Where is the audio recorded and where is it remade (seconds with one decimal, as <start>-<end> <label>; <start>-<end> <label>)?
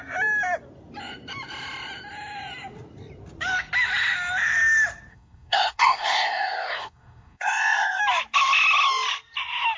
0.0-5.1 recorded; 5.1-8.0 remade; 8.0-9.8 recorded